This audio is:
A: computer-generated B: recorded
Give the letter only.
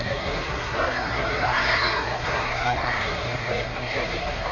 A